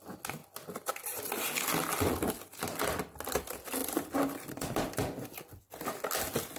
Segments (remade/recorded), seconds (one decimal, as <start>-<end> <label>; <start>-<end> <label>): 0.0-6.6 recorded